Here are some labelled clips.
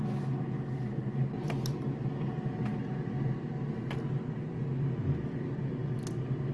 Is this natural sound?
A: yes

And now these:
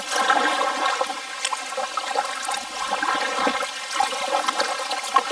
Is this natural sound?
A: yes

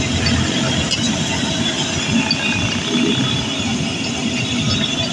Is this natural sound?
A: yes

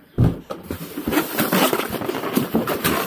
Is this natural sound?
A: no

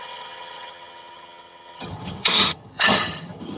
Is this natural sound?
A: no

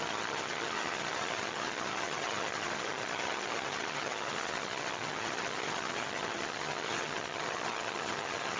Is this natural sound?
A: no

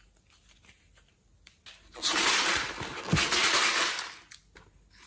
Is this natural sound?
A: yes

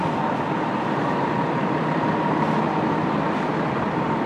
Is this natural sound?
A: yes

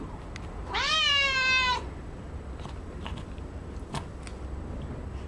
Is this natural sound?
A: yes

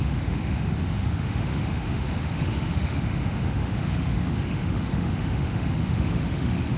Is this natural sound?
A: no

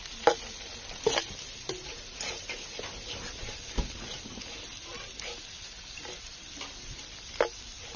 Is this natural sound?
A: yes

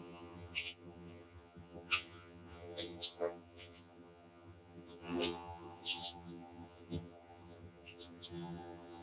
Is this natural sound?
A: no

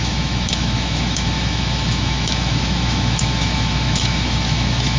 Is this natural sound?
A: no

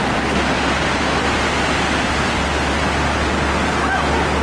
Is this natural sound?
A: yes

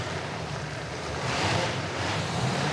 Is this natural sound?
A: no